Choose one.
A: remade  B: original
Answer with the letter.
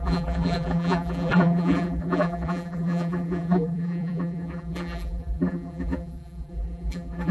A